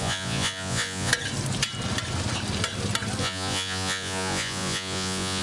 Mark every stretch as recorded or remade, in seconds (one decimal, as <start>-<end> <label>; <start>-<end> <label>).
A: 0.0-1.1 remade; 1.1-3.2 recorded; 3.2-5.4 remade